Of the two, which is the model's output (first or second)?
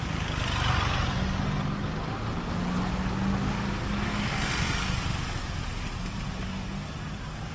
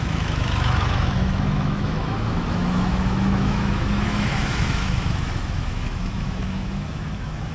second